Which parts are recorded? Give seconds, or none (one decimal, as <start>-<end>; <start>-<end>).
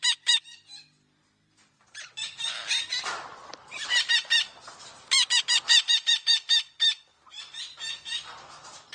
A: 7.1-7.6